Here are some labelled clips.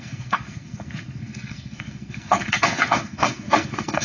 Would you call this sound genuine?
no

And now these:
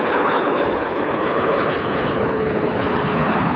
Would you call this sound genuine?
no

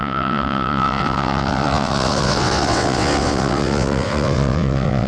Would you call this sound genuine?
no